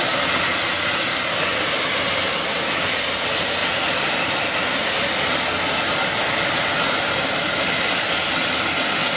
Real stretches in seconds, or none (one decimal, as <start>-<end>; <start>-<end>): 0.0-9.2